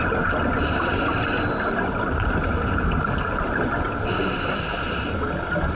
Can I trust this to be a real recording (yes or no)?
yes